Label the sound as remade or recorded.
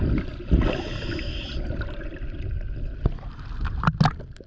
recorded